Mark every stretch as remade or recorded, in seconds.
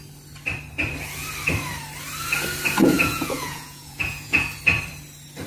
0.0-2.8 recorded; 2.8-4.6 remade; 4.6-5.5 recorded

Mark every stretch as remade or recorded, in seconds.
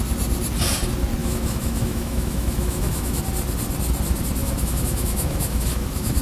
0.0-1.2 recorded; 1.2-3.2 remade; 3.2-4.4 recorded; 4.4-6.2 remade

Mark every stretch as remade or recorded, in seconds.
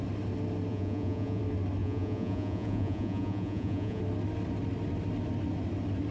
0.0-0.7 recorded; 0.7-1.4 remade; 1.4-1.8 recorded; 1.8-4.0 remade; 4.0-6.1 recorded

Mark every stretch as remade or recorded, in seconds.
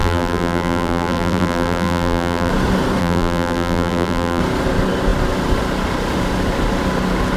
0.0-2.5 remade; 2.5-3.0 recorded; 3.0-4.4 remade; 4.4-7.4 recorded